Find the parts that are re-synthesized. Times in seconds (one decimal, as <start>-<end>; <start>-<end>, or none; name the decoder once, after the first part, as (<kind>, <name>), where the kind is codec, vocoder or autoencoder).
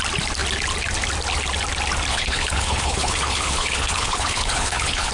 2.1-5.1 (codec, HILCodec)